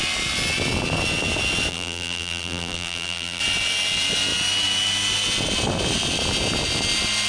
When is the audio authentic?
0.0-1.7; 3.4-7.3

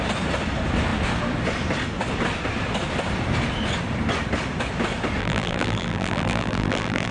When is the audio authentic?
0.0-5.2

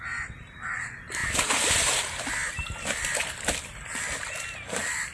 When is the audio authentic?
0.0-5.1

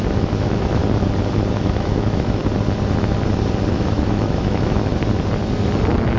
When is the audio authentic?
0.8-1.5; 2.4-3.7; 4.9-6.2

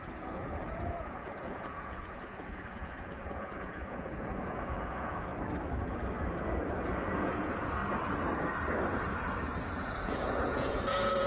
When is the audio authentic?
5.3-7.2; 7.8-9.8

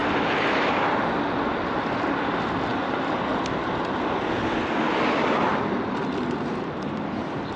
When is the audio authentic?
1.0-7.6